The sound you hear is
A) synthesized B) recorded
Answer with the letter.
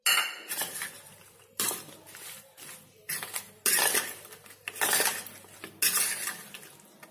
B